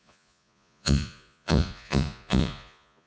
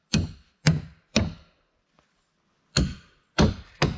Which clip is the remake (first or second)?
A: first